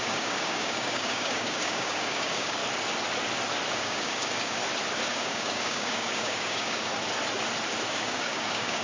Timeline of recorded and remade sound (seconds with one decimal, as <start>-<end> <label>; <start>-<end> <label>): 0.0-2.6 remade; 2.6-3.7 recorded; 3.7-4.6 remade; 4.6-5.1 recorded; 5.1-6.9 remade; 6.9-7.9 recorded; 7.9-8.8 remade